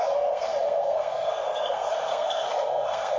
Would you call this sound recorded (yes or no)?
no